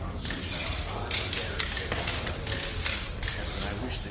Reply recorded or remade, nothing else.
recorded